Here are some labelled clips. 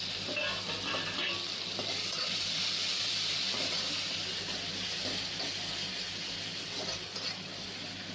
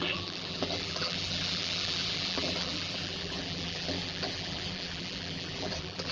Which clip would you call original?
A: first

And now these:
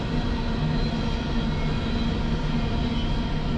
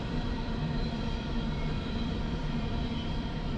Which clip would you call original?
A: first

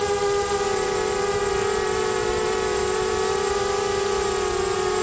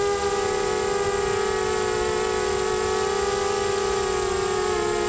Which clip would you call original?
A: second